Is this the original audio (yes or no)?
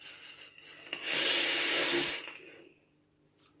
yes